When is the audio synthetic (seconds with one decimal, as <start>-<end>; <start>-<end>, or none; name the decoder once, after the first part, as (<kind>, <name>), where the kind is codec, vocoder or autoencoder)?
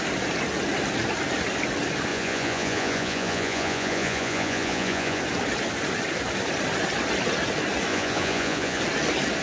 2.1-5.2 (vocoder, Vocos); 7.9-8.8